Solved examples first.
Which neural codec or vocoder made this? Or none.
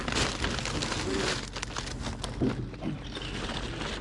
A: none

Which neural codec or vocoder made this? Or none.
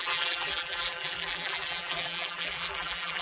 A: vocoder, BigVGAN v2